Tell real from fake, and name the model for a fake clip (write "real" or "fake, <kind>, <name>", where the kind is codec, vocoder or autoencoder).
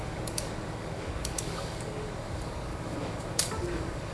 fake, codec, DAC